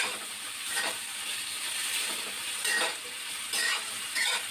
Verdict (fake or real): fake